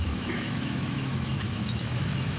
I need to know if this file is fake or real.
fake